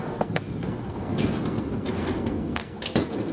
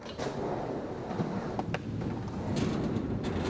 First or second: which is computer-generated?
first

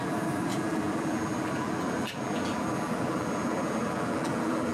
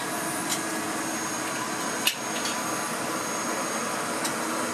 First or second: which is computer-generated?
first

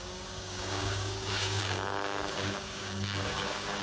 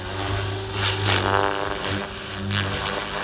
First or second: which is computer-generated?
first